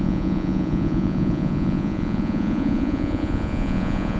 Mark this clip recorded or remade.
remade